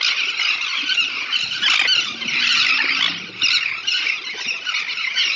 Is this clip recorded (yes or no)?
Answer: yes